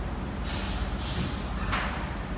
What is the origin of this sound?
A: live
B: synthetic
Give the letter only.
A